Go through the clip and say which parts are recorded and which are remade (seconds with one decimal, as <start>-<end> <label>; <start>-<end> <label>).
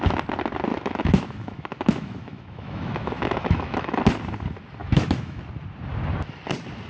0.0-0.7 recorded; 0.7-4.0 remade; 4.0-4.8 recorded; 4.8-5.4 remade; 5.4-6.9 recorded